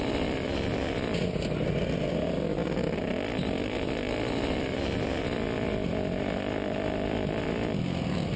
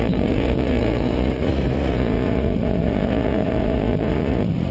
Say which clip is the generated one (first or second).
second